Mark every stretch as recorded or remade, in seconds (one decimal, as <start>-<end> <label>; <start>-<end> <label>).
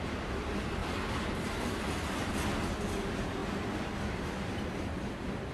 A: 0.0-3.4 recorded; 3.4-4.8 remade; 4.8-5.5 recorded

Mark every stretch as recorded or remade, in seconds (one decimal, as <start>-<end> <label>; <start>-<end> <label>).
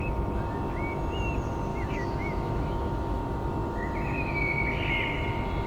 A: 0.0-1.7 recorded; 1.7-3.2 remade; 3.2-5.7 recorded